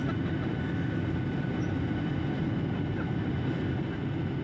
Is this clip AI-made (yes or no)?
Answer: no